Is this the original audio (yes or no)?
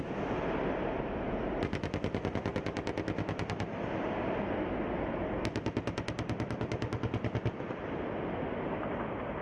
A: yes